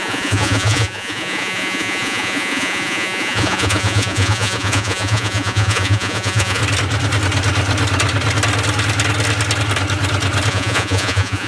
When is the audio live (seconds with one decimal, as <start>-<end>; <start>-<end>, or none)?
6.6-10.5